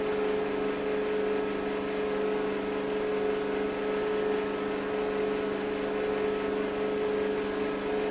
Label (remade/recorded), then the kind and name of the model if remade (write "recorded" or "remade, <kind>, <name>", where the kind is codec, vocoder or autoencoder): recorded